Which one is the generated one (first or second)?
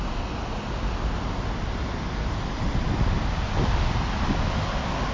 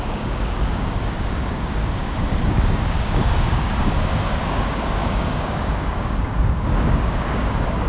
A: second